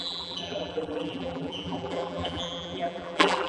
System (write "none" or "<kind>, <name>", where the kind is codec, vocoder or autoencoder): vocoder, BigVGAN v2